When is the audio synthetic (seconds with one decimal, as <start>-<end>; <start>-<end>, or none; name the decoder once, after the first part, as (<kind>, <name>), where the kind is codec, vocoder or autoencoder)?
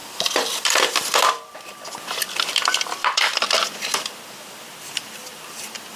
0.0-6.0 (vocoder, BigVGAN v2)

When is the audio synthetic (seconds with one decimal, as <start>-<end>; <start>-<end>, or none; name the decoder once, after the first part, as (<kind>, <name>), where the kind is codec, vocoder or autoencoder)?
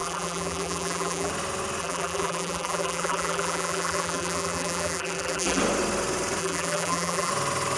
0.0-1.3 (vocoder, BigVGAN v2); 1.8-5.6; 6.4-7.3